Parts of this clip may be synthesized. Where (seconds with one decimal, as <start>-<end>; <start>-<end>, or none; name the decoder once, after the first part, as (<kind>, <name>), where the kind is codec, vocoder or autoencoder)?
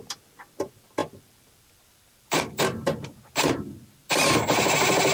0.0-5.1 (vocoder, BigVGAN v2)